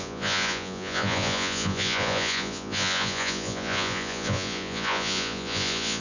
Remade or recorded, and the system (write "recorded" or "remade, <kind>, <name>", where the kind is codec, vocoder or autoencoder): remade, vocoder, Vocos